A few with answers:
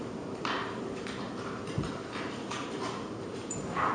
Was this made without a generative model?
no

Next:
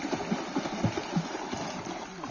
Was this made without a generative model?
yes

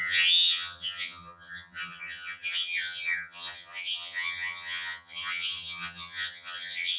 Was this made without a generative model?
no